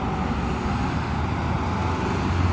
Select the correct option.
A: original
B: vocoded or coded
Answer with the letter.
A